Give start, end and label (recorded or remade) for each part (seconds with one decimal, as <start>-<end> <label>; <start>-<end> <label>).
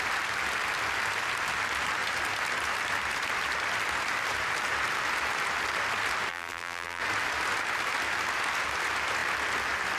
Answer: 0.0-6.3 recorded; 6.3-7.0 remade; 7.0-10.0 recorded